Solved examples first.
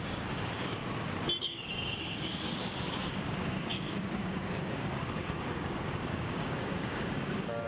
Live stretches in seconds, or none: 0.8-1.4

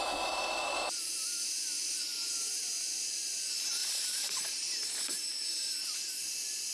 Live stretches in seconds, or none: 0.0-2.1; 2.6-3.8; 5.7-6.7